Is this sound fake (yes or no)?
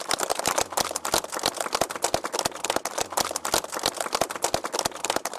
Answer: no